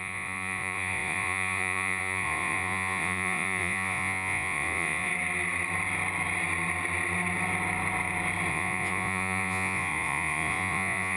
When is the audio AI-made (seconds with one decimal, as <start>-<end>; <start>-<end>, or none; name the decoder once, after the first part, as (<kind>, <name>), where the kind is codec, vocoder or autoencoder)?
0.0-5.1 (vocoder, Vocos); 8.5-11.2